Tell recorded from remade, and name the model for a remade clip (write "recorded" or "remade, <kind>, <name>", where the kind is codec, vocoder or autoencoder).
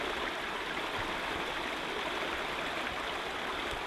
recorded